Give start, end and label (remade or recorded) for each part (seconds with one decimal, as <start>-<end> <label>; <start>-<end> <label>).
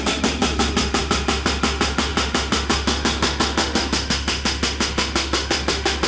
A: 0.0-6.1 remade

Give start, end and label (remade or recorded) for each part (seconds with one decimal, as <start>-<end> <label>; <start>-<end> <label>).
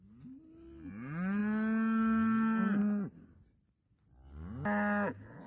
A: 0.0-5.5 recorded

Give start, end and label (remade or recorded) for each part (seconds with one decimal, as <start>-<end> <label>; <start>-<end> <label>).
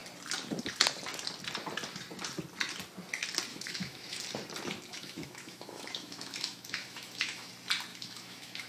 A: 0.0-3.5 recorded; 3.5-4.2 remade; 4.2-4.9 recorded; 4.9-7.5 remade; 7.5-7.9 recorded; 7.9-8.7 remade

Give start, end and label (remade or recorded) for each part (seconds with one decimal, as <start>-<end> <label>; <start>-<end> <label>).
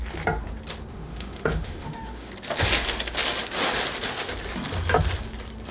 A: 0.0-0.9 recorded; 0.9-2.3 remade; 2.3-5.7 recorded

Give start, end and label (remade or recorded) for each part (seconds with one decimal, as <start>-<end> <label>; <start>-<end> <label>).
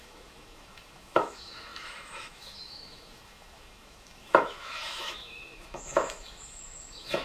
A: 0.0-7.2 remade